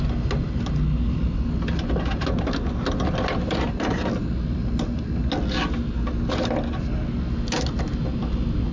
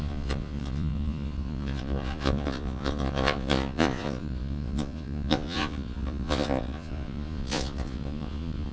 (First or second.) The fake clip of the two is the second